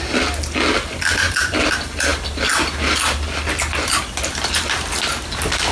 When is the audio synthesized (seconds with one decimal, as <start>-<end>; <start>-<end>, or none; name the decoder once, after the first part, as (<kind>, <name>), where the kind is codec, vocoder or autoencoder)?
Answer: none